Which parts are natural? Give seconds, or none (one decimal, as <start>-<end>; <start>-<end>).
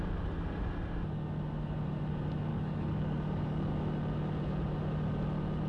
0.0-2.5; 3.7-5.7